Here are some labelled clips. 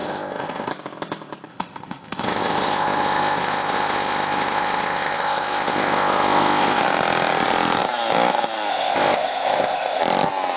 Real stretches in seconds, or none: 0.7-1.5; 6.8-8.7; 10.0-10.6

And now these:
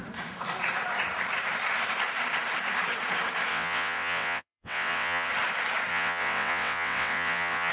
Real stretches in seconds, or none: 0.0-3.5; 5.3-5.9

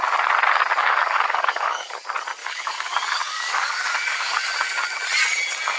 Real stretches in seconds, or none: 0.0-0.8; 2.0-2.4; 4.3-5.8

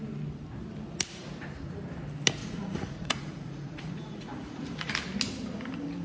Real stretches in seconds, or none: 0.0-2.4; 4.9-6.0